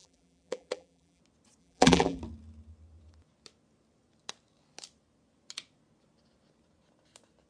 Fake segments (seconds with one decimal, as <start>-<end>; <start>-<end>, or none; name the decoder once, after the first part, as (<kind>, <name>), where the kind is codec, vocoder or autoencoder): 0.0-1.2 (vocoder, BigVGAN v2); 1.6-2.2

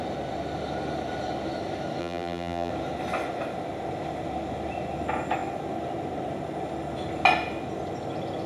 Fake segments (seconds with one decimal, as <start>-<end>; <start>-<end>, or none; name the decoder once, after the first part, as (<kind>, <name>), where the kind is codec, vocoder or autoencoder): 2.0-2.7 (vocoder, BigVGAN v2)

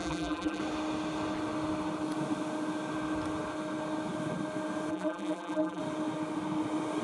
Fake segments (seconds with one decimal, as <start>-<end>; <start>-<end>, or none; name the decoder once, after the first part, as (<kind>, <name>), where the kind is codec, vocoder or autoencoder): 0.0-0.6 (vocoder, BigVGAN v2); 4.9-5.8

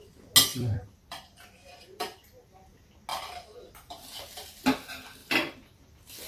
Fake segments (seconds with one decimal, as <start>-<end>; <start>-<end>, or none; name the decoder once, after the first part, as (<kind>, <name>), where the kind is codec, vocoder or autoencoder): 0.5-2.5 (vocoder, BigVGAN v2); 3.1-4.6; 5.2-6.3

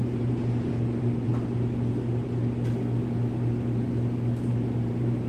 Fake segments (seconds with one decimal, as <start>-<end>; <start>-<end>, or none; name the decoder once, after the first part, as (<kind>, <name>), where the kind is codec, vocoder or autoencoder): 0.0-1.3 (vocoder, BigVGAN v2); 4.5-5.3